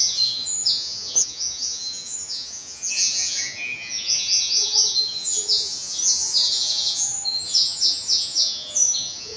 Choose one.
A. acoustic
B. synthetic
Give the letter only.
B